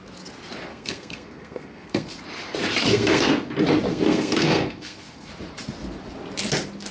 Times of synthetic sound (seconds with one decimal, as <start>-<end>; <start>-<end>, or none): 0.7-2.2; 2.9-3.5; 3.9-5.3